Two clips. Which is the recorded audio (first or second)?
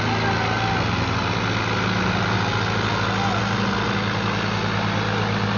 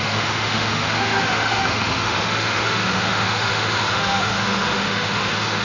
first